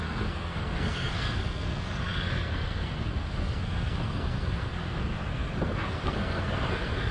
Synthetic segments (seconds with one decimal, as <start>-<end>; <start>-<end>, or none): 0.0-7.1